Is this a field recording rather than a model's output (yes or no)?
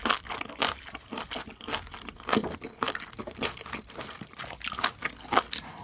yes